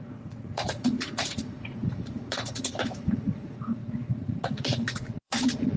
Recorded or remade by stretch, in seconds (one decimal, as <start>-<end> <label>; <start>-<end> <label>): 0.0-5.8 remade